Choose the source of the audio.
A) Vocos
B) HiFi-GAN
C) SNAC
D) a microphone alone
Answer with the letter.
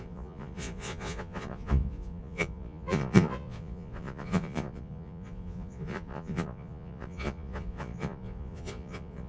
A